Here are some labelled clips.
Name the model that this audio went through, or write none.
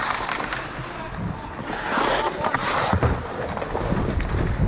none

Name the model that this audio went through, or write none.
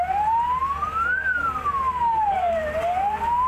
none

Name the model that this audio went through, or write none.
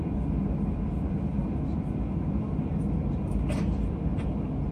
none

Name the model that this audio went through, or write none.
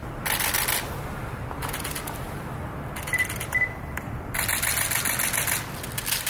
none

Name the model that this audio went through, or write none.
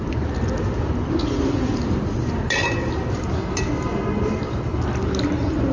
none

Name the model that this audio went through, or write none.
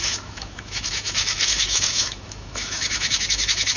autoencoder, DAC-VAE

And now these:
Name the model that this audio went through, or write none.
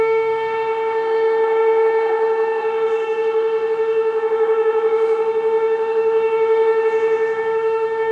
autoencoder, DAC-VAE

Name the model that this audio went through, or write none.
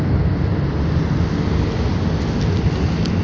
none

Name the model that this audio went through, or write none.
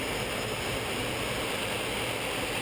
none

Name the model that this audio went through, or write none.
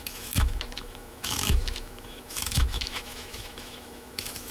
autoencoder, DAC-VAE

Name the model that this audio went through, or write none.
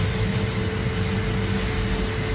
none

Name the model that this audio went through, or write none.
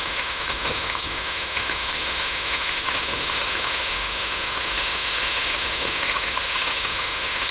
autoencoder, DAC-VAE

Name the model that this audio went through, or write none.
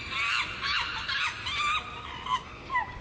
none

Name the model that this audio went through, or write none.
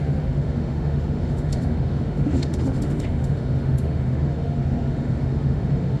autoencoder, DAC-VAE